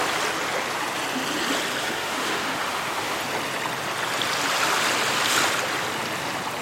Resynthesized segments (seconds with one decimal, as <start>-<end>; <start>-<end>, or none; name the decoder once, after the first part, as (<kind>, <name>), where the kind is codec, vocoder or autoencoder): 1.8-3.2 (autoencoder, DAC-VAE)